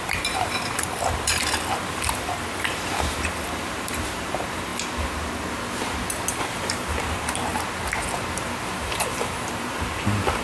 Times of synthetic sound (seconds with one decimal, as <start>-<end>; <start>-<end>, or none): 0.0-4.7; 6.3-7.5; 8.8-10.4